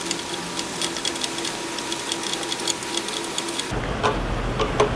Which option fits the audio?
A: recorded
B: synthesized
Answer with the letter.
A